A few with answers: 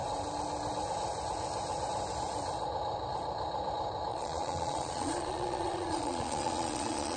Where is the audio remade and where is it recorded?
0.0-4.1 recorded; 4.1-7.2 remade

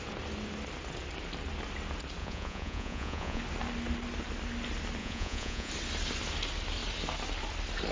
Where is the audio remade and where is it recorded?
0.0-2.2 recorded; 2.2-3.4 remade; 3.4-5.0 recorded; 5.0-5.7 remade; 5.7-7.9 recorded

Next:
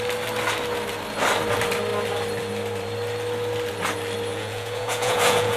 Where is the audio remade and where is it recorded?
0.0-4.3 recorded; 4.3-5.6 remade

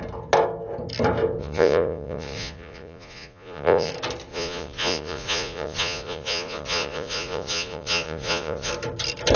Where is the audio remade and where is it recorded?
0.0-1.4 recorded; 1.4-3.9 remade; 3.9-4.3 recorded; 4.3-8.7 remade; 8.7-9.4 recorded

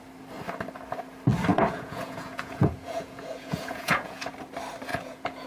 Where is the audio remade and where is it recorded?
0.0-1.5 recorded; 1.5-4.3 remade; 4.3-4.9 recorded; 4.9-5.5 remade